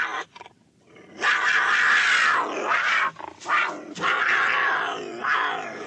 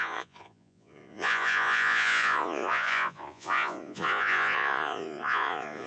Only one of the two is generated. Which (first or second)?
second